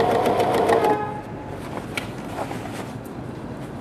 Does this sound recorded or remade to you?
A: recorded